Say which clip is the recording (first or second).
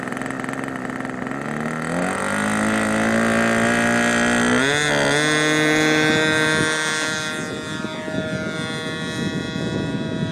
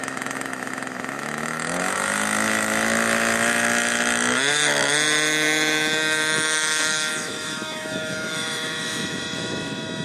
first